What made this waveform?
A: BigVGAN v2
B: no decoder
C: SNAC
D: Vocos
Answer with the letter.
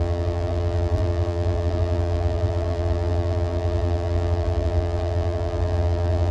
A